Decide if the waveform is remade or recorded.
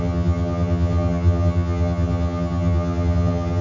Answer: remade